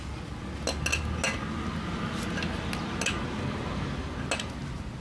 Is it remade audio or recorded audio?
recorded